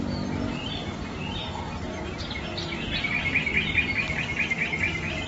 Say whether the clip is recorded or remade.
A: recorded